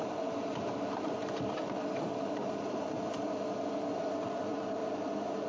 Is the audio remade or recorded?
remade